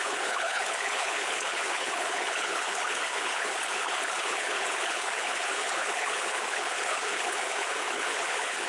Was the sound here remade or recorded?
remade